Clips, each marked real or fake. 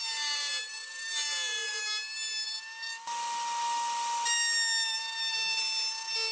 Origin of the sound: real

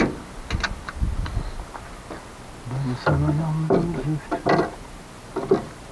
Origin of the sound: real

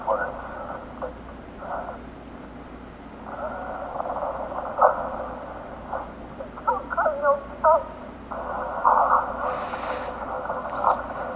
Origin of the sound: real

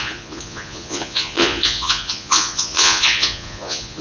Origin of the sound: fake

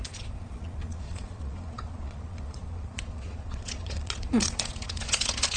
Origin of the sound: fake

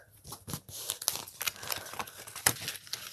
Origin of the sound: real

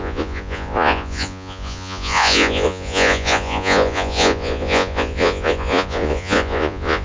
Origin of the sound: fake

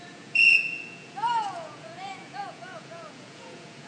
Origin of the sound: fake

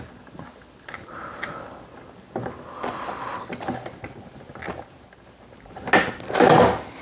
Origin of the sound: real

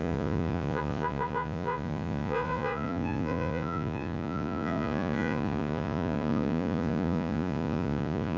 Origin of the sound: fake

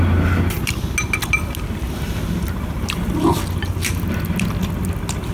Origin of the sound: real